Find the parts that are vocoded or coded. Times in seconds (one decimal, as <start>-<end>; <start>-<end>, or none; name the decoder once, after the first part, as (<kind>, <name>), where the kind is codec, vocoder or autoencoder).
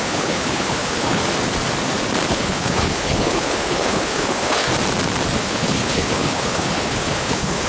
0.0-1.2 (codec, HILCodec); 2.3-4.7; 5.4-7.7